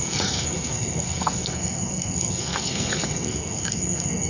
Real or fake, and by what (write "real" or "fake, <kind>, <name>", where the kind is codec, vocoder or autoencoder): fake, codec, SNAC